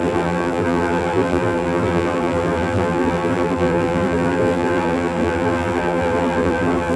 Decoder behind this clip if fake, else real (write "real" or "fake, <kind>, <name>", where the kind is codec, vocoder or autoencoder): fake, vocoder, BigVGAN v2